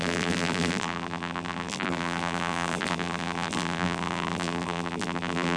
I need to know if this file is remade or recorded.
remade